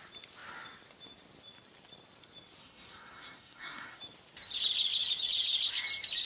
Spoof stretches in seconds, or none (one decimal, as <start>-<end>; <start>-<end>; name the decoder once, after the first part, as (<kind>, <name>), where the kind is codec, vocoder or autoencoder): 2.6-4.0 (codec, SNAC)